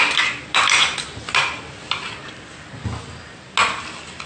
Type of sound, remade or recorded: recorded